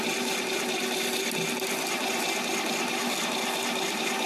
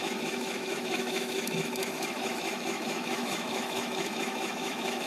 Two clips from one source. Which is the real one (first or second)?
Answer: first